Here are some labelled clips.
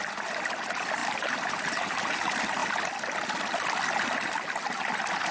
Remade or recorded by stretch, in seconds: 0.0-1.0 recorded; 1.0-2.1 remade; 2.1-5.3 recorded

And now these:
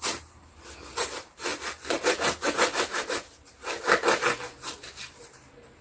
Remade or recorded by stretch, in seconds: 0.0-5.8 recorded

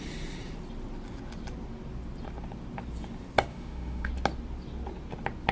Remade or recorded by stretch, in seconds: 0.0-3.5 recorded; 3.5-4.1 remade; 4.1-5.5 recorded